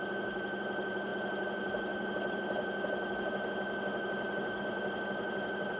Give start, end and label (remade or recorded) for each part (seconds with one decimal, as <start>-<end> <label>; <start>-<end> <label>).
0.0-5.8 recorded